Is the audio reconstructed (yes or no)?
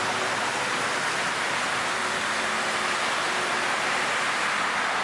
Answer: no